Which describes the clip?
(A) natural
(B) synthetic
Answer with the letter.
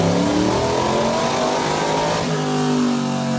A